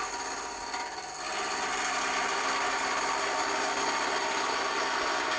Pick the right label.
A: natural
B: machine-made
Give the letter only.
A